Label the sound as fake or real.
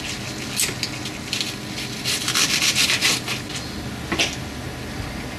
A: real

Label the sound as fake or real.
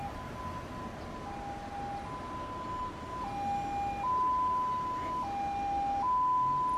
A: real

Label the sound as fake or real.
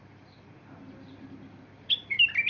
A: fake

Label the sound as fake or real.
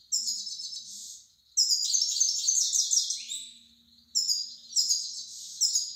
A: real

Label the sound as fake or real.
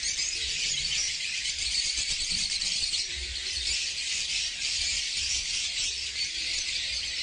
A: fake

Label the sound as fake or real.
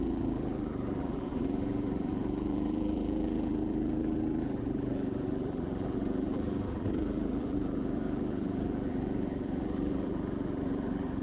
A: fake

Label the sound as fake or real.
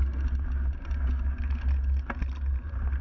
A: real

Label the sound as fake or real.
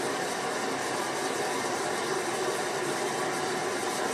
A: real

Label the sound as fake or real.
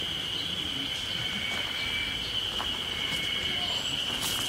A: real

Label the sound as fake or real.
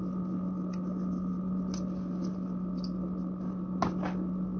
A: real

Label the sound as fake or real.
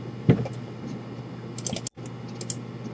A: real